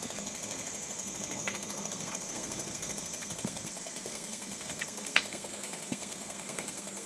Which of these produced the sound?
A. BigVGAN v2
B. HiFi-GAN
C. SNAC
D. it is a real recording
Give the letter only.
C